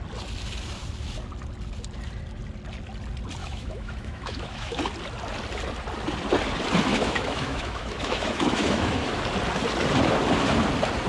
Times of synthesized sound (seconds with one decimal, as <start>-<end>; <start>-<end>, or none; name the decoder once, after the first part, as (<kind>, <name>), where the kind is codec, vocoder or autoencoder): 3.4-4.8 (autoencoder, DAC-VAE); 6.9-9.1